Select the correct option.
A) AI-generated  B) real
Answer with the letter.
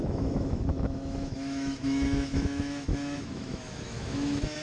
A